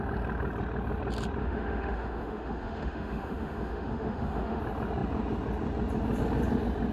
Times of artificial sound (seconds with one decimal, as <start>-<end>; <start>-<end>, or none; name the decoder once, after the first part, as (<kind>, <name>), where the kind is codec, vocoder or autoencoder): 1.4-4.6 (autoencoder, DAC-VAE)